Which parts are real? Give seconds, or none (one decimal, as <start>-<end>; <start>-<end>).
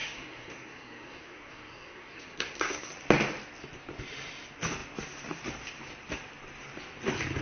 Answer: 2.9-7.4